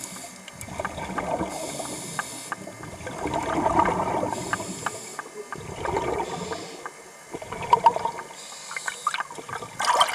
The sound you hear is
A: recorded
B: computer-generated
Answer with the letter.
A